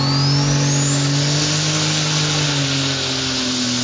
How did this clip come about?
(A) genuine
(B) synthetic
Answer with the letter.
A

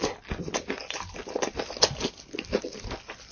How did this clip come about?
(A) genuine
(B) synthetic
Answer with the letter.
A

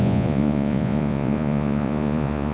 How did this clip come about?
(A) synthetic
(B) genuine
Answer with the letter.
A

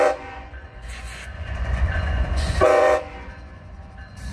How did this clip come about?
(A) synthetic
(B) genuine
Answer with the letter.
A